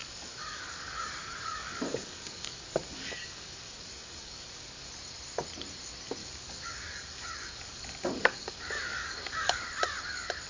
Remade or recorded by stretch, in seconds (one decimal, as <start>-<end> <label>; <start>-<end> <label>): 0.0-4.9 remade; 4.9-6.2 recorded; 6.2-9.6 remade; 9.6-10.5 recorded